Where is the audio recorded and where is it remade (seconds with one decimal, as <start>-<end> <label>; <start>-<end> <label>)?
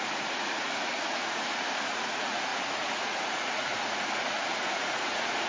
0.0-5.5 remade